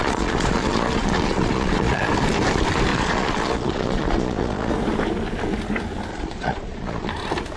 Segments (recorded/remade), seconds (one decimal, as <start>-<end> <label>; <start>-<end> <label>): 0.0-2.1 remade; 2.1-2.9 recorded; 2.9-4.7 remade; 4.7-6.1 recorded; 6.1-7.1 remade; 7.1-7.6 recorded